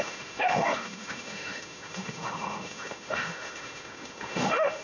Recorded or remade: remade